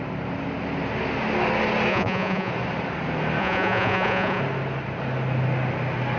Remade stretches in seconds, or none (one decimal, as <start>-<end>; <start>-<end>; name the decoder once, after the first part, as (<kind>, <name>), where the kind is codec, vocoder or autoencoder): 1.9-2.5 (vocoder, Vocos); 3.4-4.4